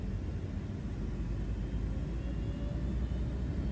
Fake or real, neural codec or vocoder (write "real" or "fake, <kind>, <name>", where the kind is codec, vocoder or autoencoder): real